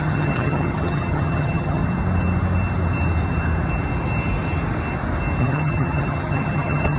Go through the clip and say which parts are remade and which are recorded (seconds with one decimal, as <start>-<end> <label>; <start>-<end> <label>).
0.0-1.8 remade; 1.8-5.4 recorded; 5.4-7.0 remade